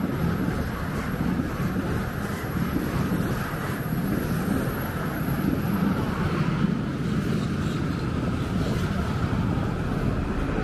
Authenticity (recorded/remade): recorded